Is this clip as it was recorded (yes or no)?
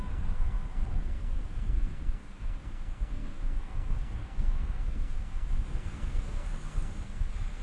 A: no